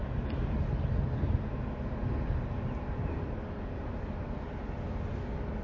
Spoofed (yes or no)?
no